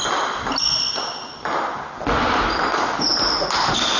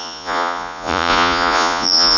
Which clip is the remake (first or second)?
second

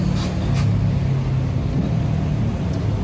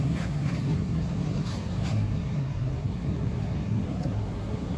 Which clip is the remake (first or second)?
second